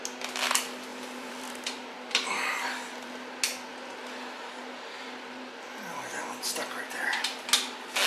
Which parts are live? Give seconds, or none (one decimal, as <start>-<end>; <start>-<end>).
0.0-0.9; 3.1-4.6; 7.5-8.1

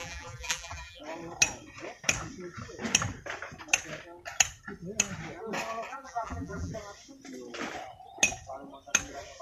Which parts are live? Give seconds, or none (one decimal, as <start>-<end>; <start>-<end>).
1.0-5.9; 6.7-9.4